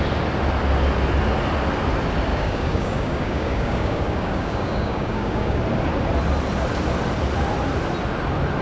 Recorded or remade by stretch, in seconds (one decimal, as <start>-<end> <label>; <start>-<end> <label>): 0.0-2.3 recorded; 2.3-5.6 remade; 5.6-8.6 recorded